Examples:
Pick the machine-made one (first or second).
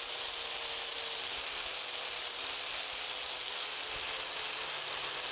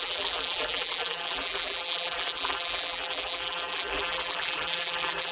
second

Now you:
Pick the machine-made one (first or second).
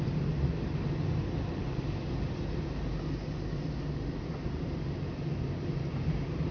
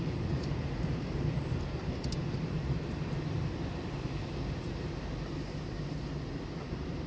second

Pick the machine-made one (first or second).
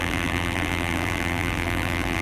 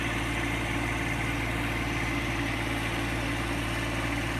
first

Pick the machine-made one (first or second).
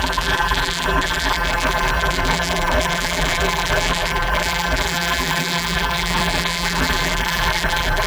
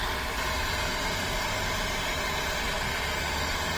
first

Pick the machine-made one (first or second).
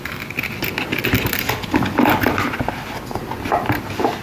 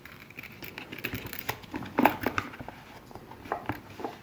second